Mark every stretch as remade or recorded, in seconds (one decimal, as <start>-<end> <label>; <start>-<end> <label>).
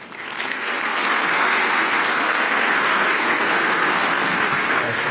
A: 0.0-5.1 remade